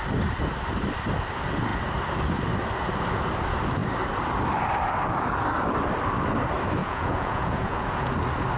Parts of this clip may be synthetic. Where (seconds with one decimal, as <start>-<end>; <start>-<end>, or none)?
6.8-8.1